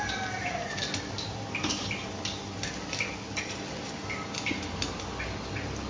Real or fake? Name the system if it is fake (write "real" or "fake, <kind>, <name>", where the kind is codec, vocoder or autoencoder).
real